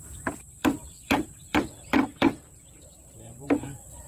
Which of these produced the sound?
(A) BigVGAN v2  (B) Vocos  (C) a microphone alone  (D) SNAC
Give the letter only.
A